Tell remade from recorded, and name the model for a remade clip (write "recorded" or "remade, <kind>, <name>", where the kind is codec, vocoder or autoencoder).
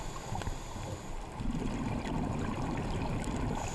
recorded